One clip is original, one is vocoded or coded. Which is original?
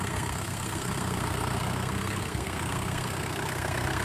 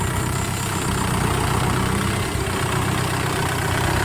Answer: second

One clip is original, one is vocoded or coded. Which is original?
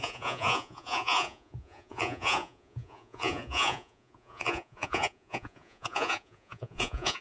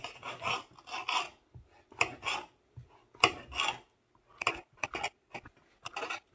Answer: second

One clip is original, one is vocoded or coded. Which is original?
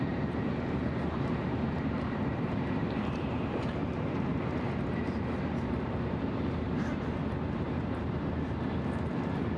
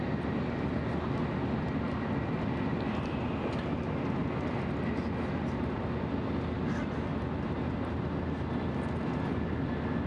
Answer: second